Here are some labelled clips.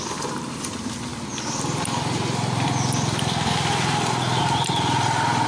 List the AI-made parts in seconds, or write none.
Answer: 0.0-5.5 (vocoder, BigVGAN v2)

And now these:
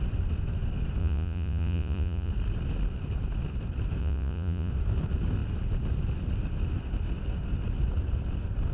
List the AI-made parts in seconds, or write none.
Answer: 1.0-2.3 (vocoder, Vocos); 4.0-4.7

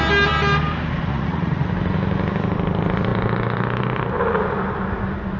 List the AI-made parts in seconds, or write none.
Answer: 1.1-1.7 (vocoder, Vocos)

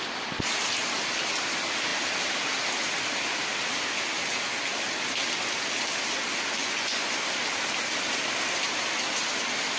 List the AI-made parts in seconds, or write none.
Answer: 6.6-7.1 (vocoder, Vocos)

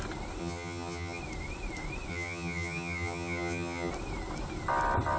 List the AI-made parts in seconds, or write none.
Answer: 0.4-1.2 (vocoder, HiFi-GAN); 2.1-3.9